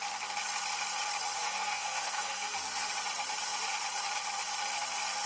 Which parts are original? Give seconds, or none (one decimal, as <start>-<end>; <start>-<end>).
0.0-1.4; 2.9-5.3